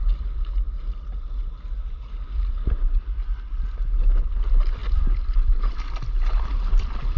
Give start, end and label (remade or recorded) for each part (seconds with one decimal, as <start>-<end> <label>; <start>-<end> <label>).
0.0-7.2 recorded